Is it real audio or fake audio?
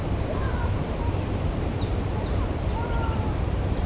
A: fake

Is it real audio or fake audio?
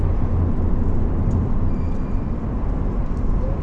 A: real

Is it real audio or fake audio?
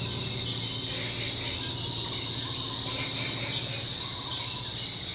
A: real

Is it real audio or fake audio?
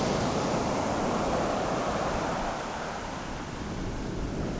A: real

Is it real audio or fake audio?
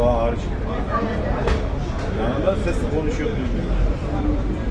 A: real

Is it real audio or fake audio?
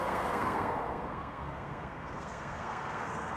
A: fake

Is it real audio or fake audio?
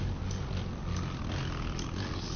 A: real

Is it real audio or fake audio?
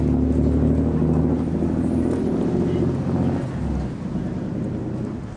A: real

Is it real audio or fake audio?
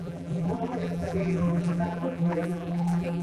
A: fake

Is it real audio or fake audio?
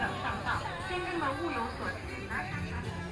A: real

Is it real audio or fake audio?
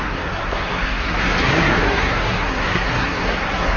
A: fake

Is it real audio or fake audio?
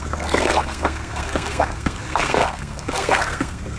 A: fake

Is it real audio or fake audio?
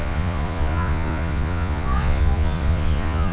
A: fake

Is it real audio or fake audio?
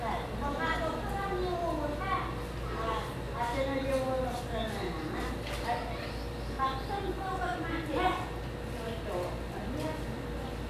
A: real